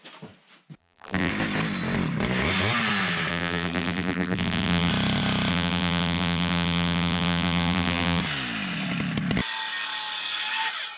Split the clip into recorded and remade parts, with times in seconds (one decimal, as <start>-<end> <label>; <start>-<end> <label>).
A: 0.0-0.8 recorded; 0.8-1.3 remade; 1.3-3.3 recorded; 3.3-4.9 remade; 4.9-5.5 recorded; 5.5-8.2 remade; 8.2-11.0 recorded